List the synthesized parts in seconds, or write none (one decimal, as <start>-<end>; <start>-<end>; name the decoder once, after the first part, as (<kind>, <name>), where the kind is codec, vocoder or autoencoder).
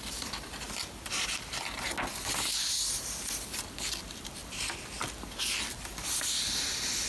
none